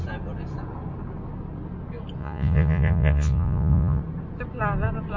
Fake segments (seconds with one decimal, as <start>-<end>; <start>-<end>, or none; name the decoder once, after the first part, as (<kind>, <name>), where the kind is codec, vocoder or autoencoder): 2.2-4.0 (vocoder, Vocos)

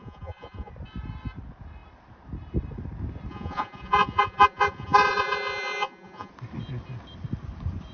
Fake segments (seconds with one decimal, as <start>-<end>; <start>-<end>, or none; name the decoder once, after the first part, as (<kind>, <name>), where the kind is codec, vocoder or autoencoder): 0.0-0.7 (vocoder, Vocos); 3.3-6.3

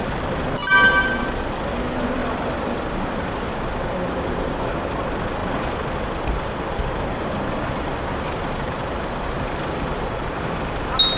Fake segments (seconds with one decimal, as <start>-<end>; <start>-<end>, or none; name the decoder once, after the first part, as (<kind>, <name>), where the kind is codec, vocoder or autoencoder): 2.2-3.1 (vocoder, BigVGAN v2); 5.4-10.4

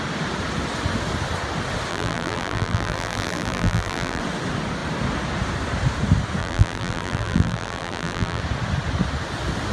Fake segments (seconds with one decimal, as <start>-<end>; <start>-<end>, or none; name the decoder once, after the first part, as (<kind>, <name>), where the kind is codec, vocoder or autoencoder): 1.9-4.2 (vocoder, BigVGAN v2); 6.4-8.4